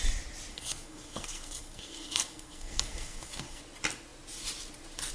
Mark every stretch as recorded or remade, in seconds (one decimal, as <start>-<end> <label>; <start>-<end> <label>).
0.0-0.5 recorded; 0.5-3.6 remade; 3.6-5.1 recorded